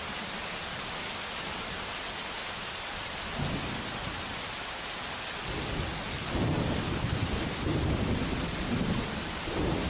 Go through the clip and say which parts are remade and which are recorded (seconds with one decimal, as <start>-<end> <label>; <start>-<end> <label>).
0.0-9.9 recorded